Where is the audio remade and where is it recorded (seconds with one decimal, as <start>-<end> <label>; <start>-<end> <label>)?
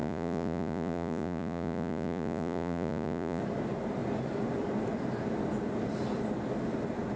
0.0-3.4 remade; 3.4-7.2 recorded